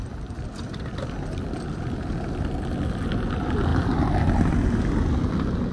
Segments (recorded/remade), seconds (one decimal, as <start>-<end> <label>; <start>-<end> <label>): 0.0-5.7 recorded